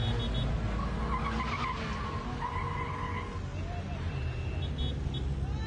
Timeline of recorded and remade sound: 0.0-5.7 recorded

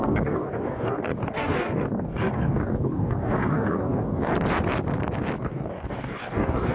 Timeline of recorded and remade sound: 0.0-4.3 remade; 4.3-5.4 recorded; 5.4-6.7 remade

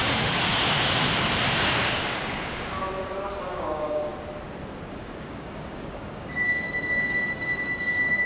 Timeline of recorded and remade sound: 0.0-0.5 remade; 0.5-1.8 recorded; 1.8-2.8 remade; 2.8-3.4 recorded; 3.4-4.1 remade; 4.1-4.9 recorded; 4.9-8.3 remade

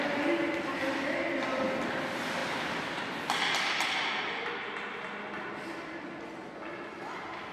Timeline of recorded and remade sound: 0.0-7.5 recorded

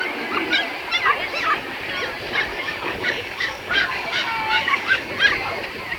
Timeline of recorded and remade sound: 0.0-2.5 recorded; 2.5-5.1 remade; 5.1-6.0 recorded

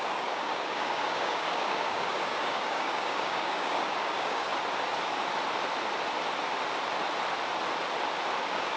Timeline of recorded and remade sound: 0.0-4.5 remade; 4.5-8.4 recorded; 8.4-8.8 remade

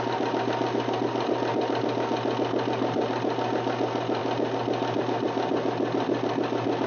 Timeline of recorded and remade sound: 0.0-6.9 recorded